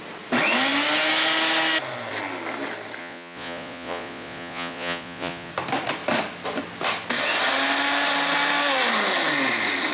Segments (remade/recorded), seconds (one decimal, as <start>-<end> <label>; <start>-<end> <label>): 0.0-3.0 recorded; 3.0-5.5 remade; 5.5-9.9 recorded